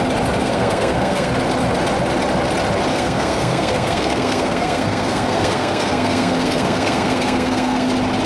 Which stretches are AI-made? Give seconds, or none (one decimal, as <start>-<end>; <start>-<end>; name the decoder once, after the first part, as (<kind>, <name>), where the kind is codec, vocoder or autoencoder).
0.4-1.3 (codec, SNAC); 2.9-7.9